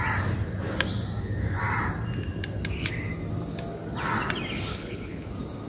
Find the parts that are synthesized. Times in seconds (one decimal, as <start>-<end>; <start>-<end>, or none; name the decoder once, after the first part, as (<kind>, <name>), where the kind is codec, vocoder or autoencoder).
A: 4.7-5.3 (codec, HILCodec)